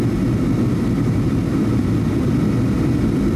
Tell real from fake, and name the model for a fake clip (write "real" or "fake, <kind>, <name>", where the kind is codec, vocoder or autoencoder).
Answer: real